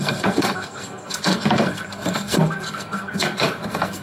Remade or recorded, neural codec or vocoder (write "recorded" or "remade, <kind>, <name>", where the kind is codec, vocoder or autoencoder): remade, codec, SNAC